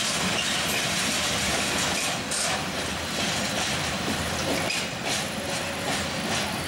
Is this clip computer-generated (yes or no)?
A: yes